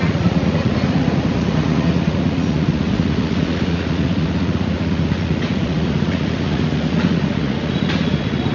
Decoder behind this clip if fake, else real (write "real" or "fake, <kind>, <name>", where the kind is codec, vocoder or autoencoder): fake, vocoder, Vocos